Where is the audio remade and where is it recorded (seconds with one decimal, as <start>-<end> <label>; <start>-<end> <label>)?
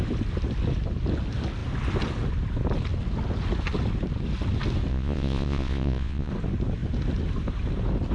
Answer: 0.0-4.9 recorded; 4.9-6.3 remade; 6.3-8.1 recorded